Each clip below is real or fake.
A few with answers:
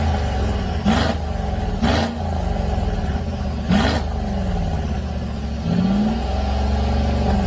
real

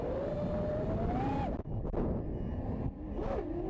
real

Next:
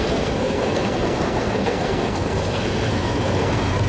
fake